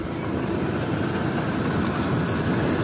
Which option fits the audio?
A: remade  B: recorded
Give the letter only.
B